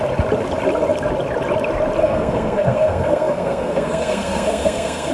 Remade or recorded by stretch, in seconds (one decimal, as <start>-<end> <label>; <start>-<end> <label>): 0.0-2.0 recorded; 2.0-5.1 remade